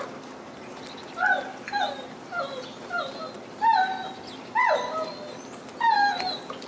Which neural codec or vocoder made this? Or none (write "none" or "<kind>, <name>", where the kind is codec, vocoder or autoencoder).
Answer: none